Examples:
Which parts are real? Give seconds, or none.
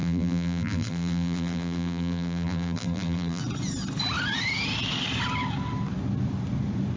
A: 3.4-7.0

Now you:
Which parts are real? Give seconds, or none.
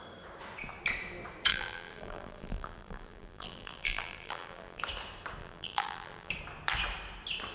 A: 0.0-1.5; 4.8-5.4; 6.3-7.5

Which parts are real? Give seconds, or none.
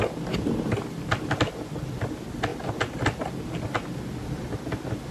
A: 0.0-5.1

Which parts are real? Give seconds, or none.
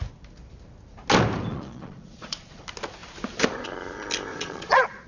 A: 0.0-1.5; 2.6-4.3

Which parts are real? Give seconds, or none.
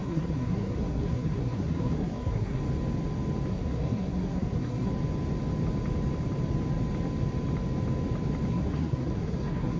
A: 2.6-3.5; 4.9-8.5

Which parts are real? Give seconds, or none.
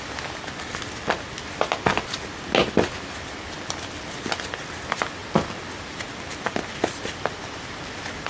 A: 0.0-8.3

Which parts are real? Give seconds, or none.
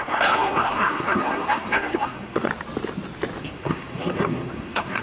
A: 2.5-3.4